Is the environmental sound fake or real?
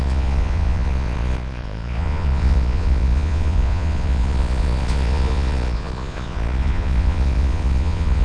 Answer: fake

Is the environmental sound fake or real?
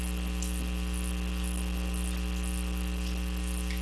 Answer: real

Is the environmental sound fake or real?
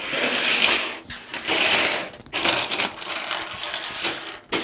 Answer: real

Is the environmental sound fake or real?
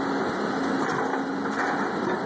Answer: real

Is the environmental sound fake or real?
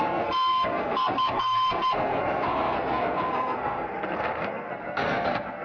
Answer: fake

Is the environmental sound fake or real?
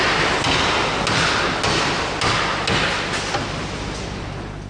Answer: real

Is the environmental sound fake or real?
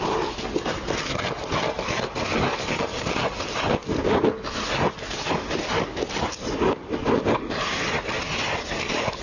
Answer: real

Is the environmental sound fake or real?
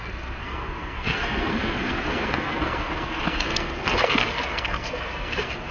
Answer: fake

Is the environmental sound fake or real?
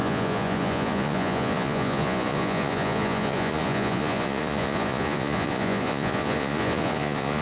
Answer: fake